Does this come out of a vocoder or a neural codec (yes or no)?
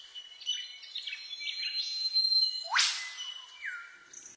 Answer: no